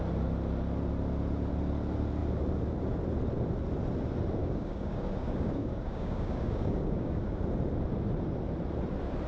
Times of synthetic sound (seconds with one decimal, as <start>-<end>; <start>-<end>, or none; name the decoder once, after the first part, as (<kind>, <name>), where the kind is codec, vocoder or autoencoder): 4.4-7.4 (codec, DAC)